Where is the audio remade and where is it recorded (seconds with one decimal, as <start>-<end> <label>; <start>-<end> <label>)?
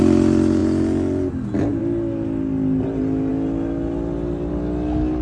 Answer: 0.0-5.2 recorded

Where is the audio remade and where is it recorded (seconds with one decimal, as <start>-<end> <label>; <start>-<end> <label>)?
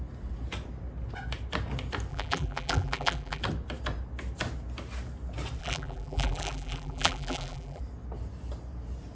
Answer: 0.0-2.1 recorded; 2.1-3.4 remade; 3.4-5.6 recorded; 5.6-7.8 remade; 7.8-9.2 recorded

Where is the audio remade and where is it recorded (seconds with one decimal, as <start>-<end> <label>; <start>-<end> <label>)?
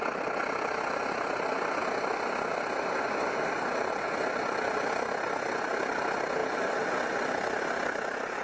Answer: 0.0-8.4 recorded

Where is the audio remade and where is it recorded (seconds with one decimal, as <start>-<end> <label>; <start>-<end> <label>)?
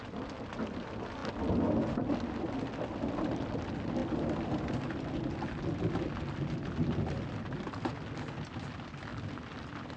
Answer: 0.0-10.0 recorded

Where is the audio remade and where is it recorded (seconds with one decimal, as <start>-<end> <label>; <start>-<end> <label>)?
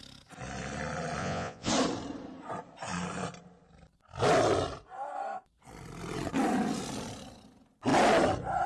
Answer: 0.0-1.2 recorded; 1.2-1.7 remade; 1.7-8.7 recorded